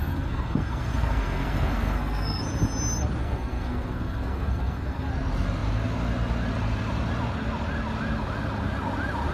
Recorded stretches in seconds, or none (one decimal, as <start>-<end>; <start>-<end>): 2.4-3.2; 5.1-9.3